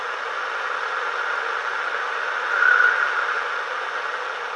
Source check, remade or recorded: recorded